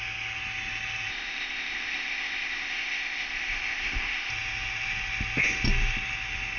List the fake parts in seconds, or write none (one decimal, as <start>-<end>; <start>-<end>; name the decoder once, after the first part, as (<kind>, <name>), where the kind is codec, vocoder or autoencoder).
1.1-4.3 (codec, ZipCodec)